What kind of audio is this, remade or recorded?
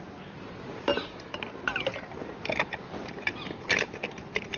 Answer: recorded